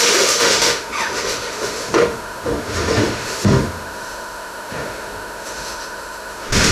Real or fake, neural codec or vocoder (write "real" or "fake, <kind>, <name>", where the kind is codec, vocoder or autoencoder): fake, autoencoder, DAC-VAE